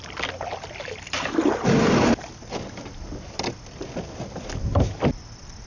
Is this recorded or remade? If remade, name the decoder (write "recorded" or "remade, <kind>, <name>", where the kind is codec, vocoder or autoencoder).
recorded